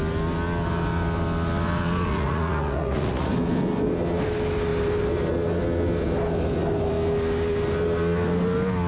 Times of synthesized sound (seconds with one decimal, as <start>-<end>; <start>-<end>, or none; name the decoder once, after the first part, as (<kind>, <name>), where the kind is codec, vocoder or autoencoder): 2.1-3.3 (vocoder, Vocos)